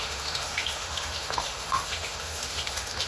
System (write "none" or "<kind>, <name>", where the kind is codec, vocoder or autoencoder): autoencoder, DAC-VAE